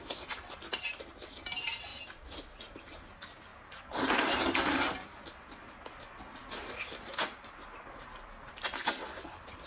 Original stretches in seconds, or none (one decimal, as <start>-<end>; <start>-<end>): 0.0-1.9; 2.4-3.5; 4.4-6.4; 8.5-9.7